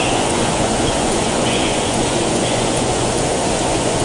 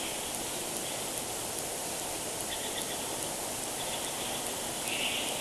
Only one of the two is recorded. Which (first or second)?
second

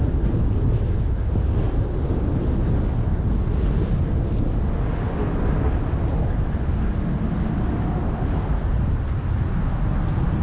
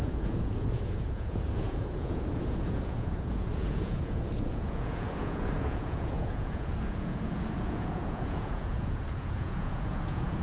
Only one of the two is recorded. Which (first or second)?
first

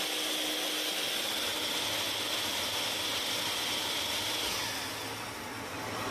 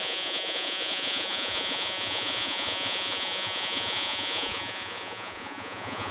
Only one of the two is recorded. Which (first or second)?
first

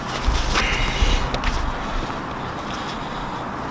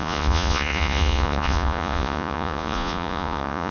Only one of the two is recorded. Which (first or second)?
first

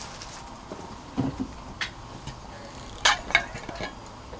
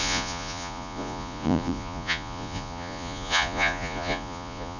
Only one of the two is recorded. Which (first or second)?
first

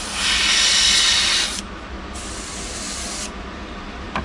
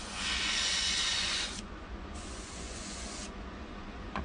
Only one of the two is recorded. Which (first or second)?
first